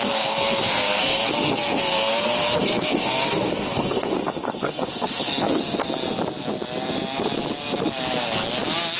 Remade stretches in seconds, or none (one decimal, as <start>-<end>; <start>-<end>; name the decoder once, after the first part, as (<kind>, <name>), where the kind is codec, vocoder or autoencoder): 0.0-5.6 (codec, SNAC)